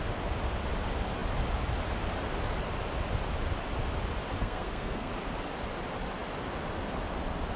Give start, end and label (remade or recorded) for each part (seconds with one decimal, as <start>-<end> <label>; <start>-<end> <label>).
0.0-4.4 recorded; 4.4-5.1 remade; 5.1-7.6 recorded